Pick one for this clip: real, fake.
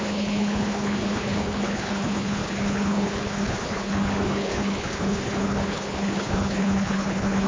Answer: fake